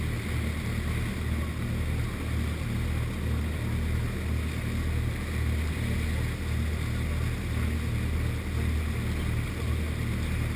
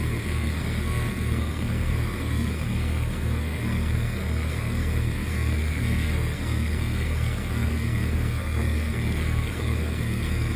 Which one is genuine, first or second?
first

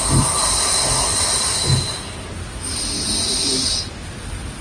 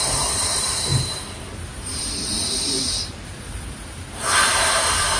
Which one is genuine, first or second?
first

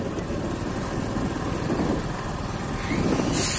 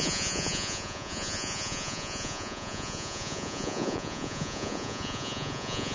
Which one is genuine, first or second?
first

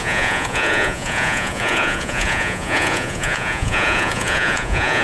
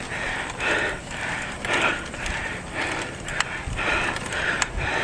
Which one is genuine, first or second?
second